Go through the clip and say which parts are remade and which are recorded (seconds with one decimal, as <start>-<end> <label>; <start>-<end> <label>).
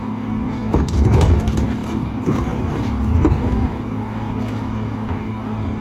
0.0-5.8 remade